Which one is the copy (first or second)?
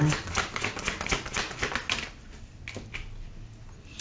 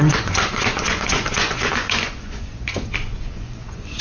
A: second